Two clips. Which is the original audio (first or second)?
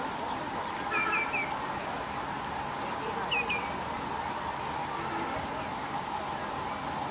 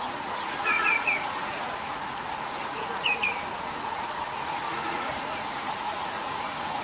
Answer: first